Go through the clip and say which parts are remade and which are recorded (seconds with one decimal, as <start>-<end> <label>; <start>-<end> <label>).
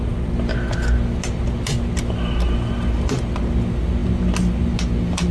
0.0-5.3 recorded